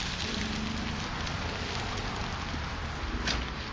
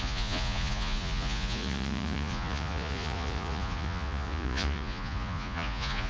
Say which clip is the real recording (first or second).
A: first